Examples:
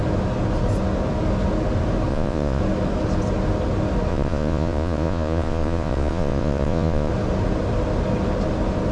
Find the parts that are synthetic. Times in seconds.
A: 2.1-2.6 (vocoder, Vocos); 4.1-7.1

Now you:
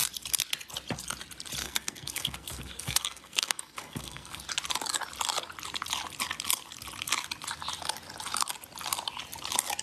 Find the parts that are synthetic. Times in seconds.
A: 1.6-4.4 (codec, SNAC)

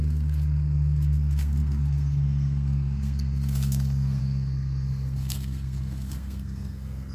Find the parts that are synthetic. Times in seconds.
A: 0.0-7.1 (codec, SNAC)